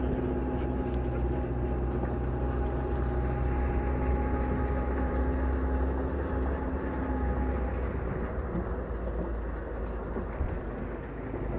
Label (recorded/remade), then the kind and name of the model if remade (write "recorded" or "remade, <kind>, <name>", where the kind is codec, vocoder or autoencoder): recorded